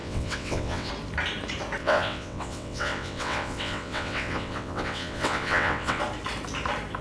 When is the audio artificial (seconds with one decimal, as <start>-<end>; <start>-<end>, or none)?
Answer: 0.0-0.9; 1.8-6.0

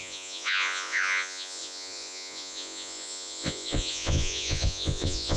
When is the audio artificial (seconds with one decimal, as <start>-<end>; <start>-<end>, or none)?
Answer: 0.0-5.4

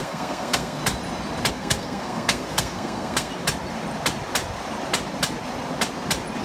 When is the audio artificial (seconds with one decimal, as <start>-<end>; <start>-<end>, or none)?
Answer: 0.0-0.8; 1.5-3.3